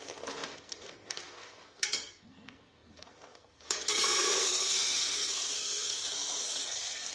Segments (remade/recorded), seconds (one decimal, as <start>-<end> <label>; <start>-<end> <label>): 0.0-7.1 remade